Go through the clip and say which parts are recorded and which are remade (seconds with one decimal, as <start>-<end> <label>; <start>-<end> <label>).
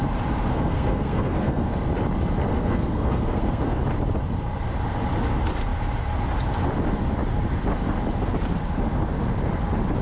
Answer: 0.0-0.5 recorded; 0.5-1.7 remade; 1.7-2.5 recorded; 2.5-3.8 remade; 3.8-10.0 recorded